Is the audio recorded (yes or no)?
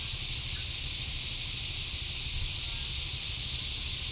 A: yes